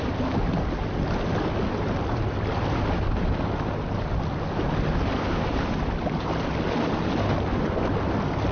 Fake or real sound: real